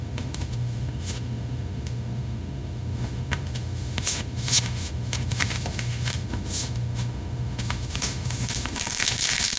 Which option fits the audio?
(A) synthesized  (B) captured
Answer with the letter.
A